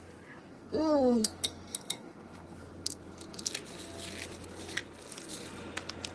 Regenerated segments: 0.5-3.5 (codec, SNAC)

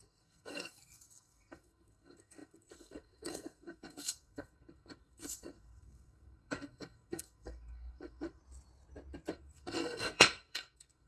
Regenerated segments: 0.0-8.4 (codec, SNAC); 9.3-11.1